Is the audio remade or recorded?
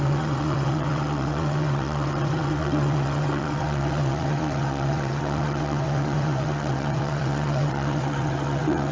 remade